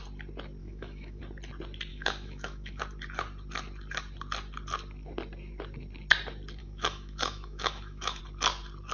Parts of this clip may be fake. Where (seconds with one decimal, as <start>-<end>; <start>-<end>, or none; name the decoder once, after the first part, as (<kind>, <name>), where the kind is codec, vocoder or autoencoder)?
0.6-1.2 (autoencoder, DAC-VAE); 1.9-2.8; 6.6-8.2